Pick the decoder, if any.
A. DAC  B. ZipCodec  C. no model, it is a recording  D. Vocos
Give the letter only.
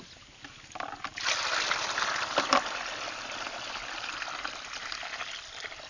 C